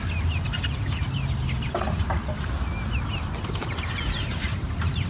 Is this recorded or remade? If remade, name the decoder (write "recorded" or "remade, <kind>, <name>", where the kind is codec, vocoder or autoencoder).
recorded